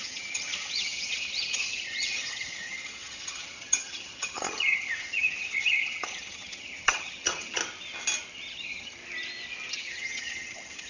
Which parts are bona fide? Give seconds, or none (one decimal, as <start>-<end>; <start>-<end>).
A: 7.6-8.5; 9.0-9.7

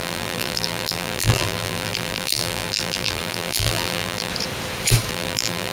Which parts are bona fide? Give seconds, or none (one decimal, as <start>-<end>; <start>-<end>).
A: 4.3-5.1

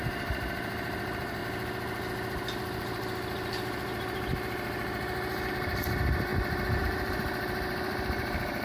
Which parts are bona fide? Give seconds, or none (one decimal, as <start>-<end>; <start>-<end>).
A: 1.4-5.5; 6.3-6.8

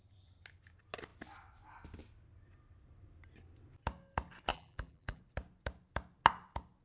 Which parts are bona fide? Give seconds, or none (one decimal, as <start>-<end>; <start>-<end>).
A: 0.0-4.5; 5.2-6.8